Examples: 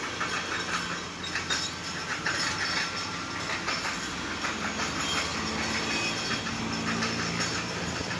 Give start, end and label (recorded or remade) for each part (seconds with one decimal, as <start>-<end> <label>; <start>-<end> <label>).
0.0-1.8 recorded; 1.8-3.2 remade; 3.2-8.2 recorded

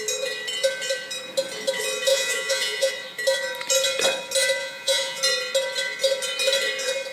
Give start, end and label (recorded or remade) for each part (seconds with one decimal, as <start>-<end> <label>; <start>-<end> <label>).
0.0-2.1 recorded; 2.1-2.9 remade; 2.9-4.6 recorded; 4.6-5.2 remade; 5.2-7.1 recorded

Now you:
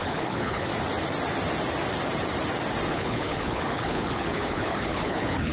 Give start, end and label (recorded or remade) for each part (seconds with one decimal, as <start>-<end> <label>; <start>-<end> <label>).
0.0-0.7 remade; 0.7-2.9 recorded; 2.9-5.5 remade

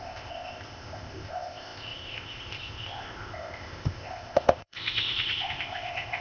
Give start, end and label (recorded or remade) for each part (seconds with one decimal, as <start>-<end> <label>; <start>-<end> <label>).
0.0-6.2 remade

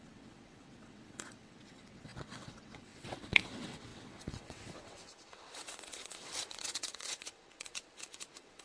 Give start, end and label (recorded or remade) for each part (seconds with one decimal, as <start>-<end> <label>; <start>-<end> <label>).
0.0-8.6 remade

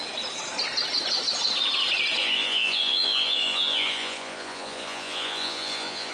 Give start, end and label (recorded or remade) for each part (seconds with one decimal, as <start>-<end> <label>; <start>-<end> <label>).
0.0-2.2 recorded; 2.2-6.1 remade

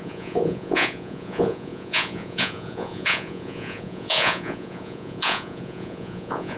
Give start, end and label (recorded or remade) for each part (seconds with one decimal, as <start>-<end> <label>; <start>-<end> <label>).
0.0-6.6 remade

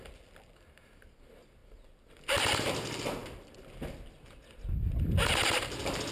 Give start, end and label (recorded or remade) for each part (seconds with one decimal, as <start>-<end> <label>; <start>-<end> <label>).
0.0-6.1 recorded